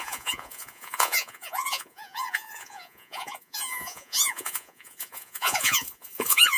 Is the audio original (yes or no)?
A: no